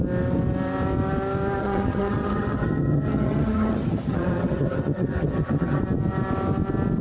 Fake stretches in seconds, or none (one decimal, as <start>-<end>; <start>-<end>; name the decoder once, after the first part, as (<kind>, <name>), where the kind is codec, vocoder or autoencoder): 1.6-5.8 (vocoder, HiFi-GAN)

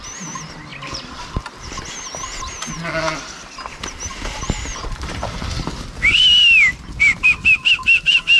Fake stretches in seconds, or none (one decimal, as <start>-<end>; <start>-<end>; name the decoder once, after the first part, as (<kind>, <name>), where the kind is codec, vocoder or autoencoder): none

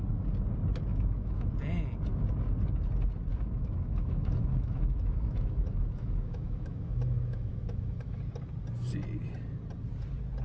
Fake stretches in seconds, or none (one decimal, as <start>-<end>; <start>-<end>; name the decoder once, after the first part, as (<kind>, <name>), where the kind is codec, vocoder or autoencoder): 0.9-1.5 (autoencoder, DAC-VAE); 3.3-8.2